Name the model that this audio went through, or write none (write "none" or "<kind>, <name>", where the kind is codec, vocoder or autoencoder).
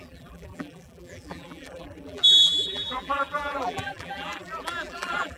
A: vocoder, BigVGAN v2